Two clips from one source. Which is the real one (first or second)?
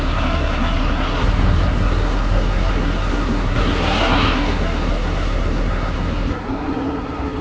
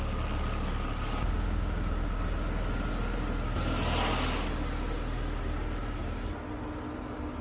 second